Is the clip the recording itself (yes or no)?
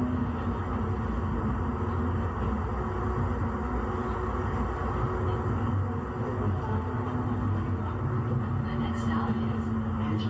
yes